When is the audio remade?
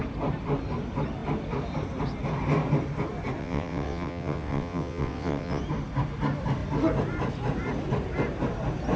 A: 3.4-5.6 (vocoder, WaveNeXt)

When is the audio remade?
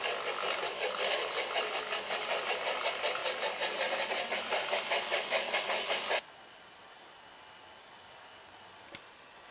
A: none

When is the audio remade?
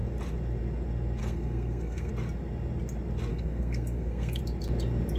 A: 1.2-2.1 (codec, SNAC); 3.3-4.4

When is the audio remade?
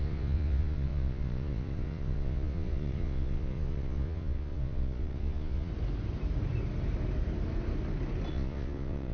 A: 0.0-5.7 (vocoder, Vocos); 8.3-9.1